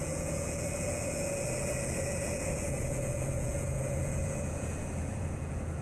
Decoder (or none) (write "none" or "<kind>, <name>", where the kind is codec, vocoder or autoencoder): vocoder, Vocos